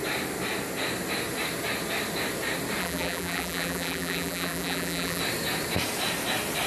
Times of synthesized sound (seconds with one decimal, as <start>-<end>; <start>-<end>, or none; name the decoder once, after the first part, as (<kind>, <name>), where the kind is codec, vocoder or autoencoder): 2.8-5.2 (vocoder, BigVGAN v2)